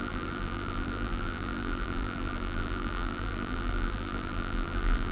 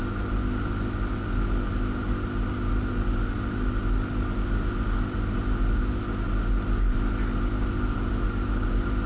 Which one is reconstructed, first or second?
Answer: first